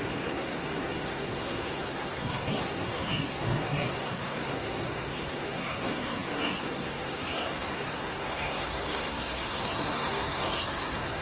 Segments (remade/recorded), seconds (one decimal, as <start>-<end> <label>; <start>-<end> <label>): 0.0-11.2 remade